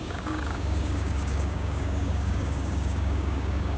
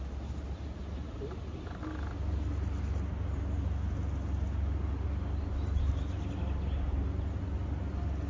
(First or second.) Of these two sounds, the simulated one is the first